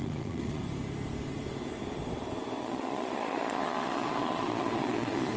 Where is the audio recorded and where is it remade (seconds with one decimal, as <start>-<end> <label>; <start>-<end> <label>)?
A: 0.0-0.6 remade; 0.6-2.6 recorded; 2.6-5.4 remade